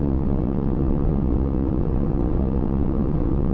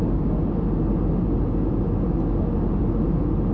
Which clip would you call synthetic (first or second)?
first